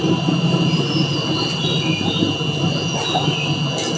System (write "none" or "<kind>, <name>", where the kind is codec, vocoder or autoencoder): none